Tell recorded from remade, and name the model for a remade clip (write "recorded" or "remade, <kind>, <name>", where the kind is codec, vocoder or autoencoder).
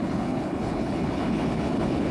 remade, codec, HILCodec